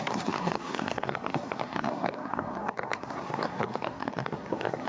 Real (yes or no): no